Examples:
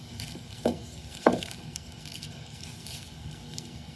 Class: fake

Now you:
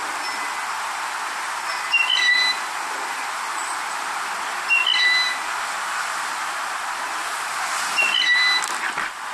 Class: real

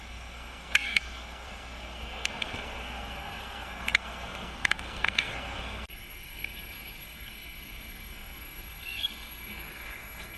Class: fake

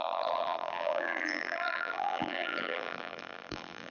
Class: fake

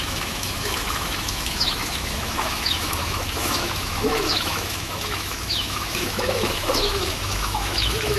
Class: fake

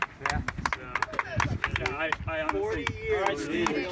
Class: real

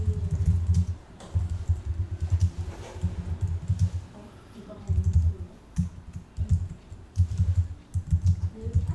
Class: real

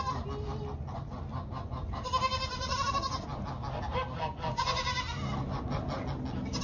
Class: real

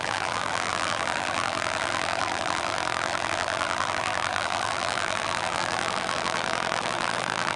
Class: fake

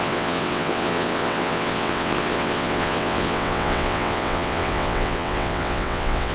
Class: fake